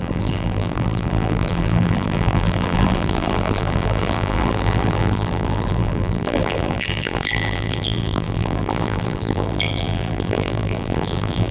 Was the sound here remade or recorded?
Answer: remade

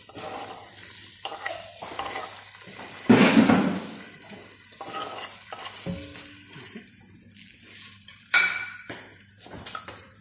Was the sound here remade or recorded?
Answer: recorded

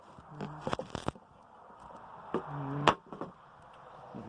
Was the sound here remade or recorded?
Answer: recorded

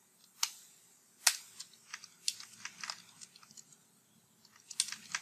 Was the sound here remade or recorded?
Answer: recorded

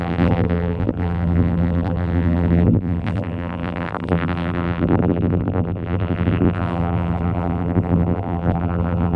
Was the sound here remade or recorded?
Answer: remade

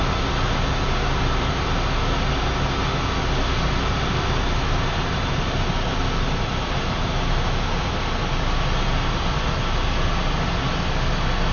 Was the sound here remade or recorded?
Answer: recorded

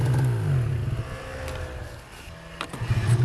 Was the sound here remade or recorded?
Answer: recorded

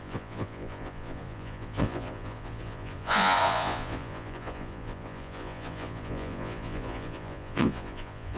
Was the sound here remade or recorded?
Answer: remade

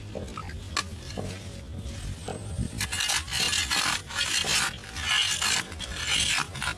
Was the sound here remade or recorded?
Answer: recorded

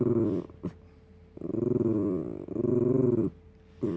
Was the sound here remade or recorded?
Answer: recorded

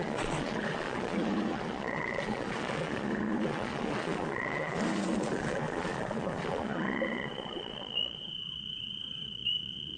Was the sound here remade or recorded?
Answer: remade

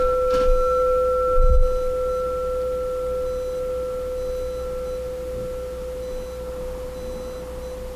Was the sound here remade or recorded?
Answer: recorded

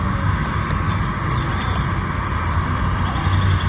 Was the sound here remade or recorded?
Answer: recorded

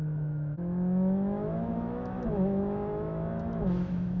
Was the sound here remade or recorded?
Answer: remade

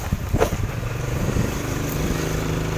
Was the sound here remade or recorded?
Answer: remade